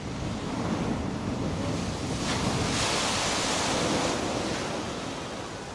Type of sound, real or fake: real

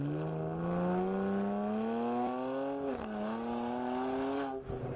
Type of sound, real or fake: real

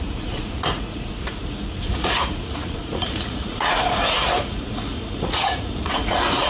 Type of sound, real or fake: fake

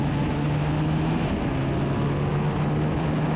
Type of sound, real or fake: real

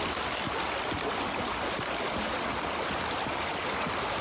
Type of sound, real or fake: real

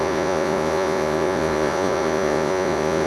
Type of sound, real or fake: fake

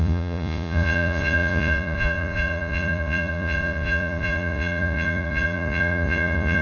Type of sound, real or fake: fake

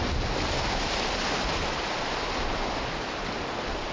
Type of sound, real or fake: real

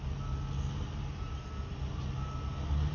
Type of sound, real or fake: real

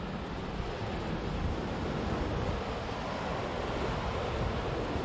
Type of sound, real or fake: real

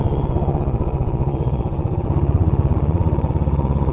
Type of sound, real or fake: fake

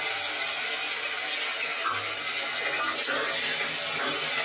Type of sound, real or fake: real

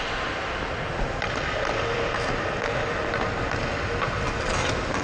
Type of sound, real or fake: real